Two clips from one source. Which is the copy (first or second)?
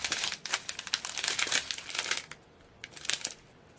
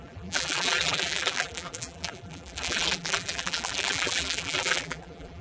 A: second